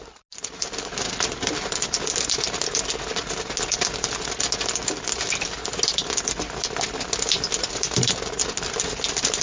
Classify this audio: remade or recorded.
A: recorded